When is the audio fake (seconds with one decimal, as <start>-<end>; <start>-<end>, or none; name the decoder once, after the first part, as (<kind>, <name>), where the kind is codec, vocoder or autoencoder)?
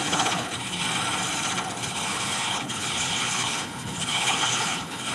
0.0-0.8 (codec, HILCodec); 1.8-5.1